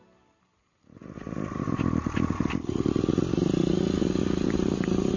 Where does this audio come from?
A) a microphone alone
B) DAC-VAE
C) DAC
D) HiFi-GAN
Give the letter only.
A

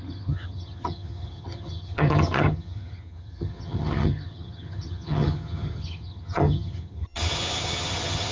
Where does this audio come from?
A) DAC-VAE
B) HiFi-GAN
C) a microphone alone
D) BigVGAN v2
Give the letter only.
B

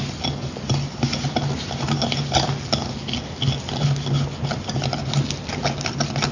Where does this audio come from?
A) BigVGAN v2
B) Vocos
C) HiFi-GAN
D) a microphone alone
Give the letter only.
D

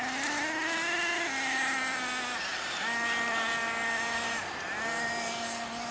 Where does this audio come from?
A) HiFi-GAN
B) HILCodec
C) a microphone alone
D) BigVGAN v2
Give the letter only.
C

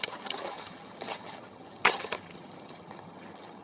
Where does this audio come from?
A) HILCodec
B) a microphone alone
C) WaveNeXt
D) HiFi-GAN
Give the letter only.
D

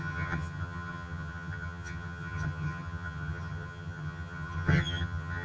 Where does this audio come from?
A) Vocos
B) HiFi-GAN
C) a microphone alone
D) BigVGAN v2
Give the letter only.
B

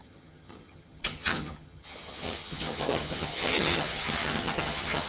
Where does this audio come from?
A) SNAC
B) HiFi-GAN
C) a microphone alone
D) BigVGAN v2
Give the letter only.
B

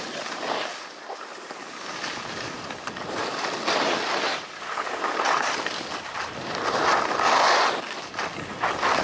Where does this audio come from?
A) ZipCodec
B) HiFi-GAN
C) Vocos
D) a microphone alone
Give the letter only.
D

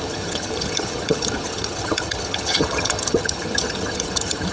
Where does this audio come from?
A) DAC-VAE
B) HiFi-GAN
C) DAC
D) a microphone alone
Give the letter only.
B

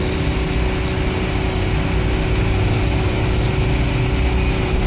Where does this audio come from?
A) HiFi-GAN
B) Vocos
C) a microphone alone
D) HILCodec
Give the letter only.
C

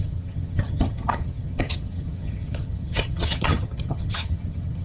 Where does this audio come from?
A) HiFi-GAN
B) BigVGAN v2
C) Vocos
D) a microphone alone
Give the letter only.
A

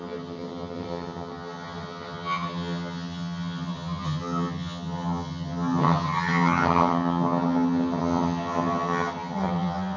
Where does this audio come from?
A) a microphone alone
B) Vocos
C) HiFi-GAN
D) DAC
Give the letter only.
C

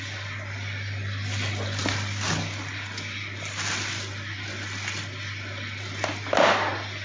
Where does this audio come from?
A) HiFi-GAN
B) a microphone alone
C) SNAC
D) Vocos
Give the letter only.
B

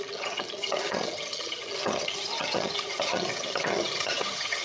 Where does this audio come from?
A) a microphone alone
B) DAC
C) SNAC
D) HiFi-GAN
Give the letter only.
D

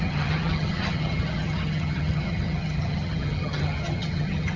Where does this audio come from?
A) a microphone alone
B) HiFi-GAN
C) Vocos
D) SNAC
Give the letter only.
B